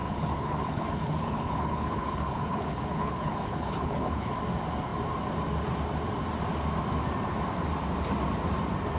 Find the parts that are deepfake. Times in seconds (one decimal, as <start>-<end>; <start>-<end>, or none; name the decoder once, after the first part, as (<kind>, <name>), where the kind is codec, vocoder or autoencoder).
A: 0.0-4.3 (codec, HILCodec)